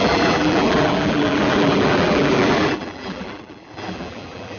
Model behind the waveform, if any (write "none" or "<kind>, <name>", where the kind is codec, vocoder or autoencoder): vocoder, BigVGAN v2